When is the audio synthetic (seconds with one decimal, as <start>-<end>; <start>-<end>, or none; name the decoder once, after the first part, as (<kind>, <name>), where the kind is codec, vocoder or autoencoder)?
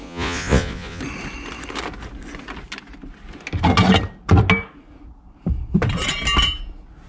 0.0-1.0 (vocoder, Vocos)